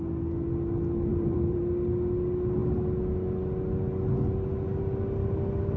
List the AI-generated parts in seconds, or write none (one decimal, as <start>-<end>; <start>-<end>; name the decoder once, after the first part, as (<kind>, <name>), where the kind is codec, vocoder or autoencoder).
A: 1.1-1.6 (vocoder, BigVGAN v2)

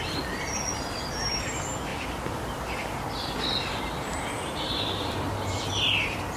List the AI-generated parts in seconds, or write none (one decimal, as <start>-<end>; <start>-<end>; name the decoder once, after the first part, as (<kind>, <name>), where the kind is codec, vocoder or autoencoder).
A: 1.9-5.7 (vocoder, BigVGAN v2)

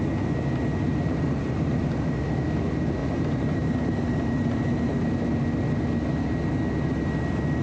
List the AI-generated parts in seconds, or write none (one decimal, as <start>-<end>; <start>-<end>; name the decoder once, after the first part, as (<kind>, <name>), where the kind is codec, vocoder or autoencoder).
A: 0.9-2.2 (vocoder, BigVGAN v2); 3.0-5.3

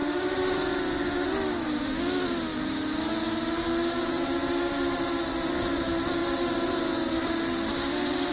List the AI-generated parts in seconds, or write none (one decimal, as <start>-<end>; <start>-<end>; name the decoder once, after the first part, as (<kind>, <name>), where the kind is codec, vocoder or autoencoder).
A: 0.0-0.5 (vocoder, BigVGAN v2); 2.5-3.1; 6.2-7.4

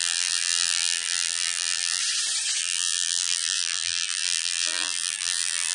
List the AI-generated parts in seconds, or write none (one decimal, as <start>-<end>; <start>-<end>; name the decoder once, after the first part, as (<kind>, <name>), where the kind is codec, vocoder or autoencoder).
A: 0.0-2.0 (vocoder, BigVGAN v2); 2.6-5.7

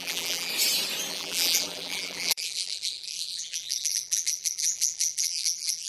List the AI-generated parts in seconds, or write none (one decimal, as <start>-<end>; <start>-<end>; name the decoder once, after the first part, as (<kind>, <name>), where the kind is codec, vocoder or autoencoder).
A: 0.0-0.5 (vocoder, BigVGAN v2); 1.1-5.9

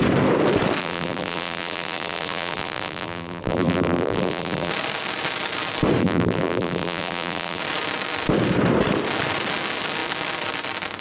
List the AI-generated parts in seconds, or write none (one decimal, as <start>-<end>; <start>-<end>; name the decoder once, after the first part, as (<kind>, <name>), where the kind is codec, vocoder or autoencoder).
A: 0.8-4.7 (vocoder, BigVGAN v2); 6.0-7.6

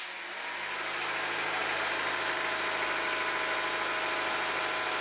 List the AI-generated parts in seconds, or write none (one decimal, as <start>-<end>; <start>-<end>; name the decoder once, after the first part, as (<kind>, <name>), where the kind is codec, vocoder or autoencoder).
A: none